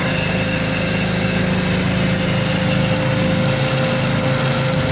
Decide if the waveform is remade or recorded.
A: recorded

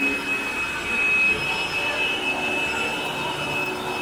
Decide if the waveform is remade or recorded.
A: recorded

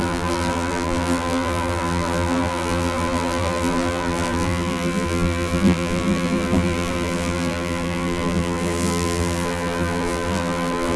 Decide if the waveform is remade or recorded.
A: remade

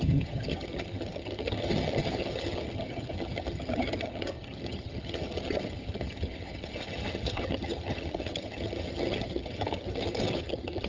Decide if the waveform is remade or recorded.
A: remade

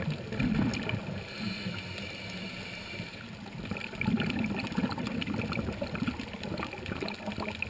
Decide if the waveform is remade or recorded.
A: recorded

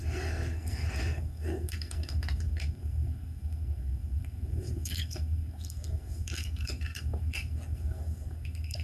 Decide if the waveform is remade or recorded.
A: remade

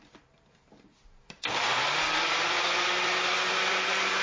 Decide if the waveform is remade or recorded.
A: remade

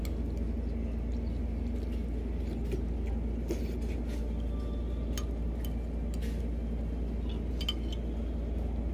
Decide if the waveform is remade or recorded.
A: recorded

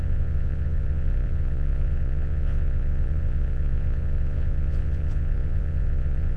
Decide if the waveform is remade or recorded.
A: remade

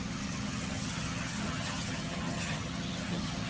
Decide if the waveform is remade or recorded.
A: remade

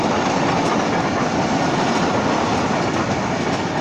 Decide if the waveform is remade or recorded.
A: recorded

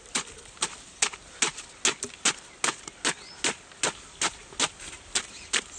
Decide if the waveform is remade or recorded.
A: recorded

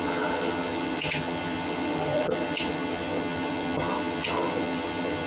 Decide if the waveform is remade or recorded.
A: remade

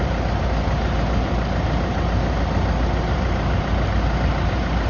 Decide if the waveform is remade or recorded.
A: recorded